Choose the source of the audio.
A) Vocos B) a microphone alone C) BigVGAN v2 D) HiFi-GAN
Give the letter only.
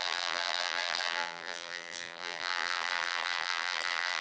C